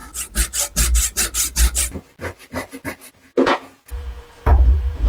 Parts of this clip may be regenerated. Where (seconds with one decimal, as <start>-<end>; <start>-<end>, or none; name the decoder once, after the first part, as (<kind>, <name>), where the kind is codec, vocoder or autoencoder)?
3.1-5.1 (vocoder, Vocos)